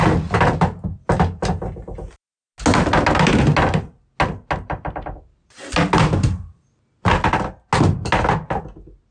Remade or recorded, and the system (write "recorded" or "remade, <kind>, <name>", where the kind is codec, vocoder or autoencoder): recorded